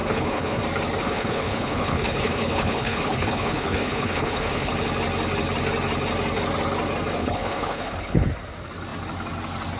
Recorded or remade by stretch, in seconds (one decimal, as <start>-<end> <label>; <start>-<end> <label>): 0.0-0.6 remade; 0.6-1.0 recorded; 1.0-4.7 remade; 4.7-7.2 recorded; 7.2-8.3 remade; 8.3-9.8 recorded